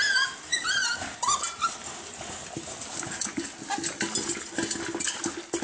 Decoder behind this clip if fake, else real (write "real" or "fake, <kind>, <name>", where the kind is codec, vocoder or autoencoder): real